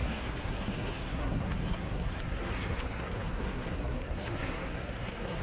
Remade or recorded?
remade